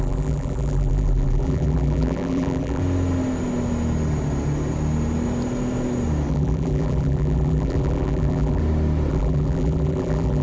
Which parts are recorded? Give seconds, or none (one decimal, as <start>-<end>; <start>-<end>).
2.8-6.3; 8.6-9.1

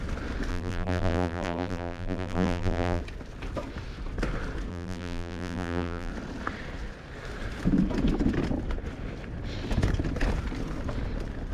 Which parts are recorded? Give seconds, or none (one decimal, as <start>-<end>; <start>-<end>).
0.0-0.5; 3.0-4.7; 6.1-11.5

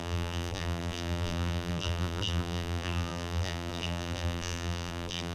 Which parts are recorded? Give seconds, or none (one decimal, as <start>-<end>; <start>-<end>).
none